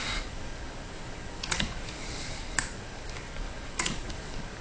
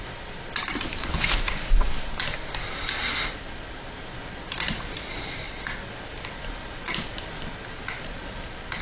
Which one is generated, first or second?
first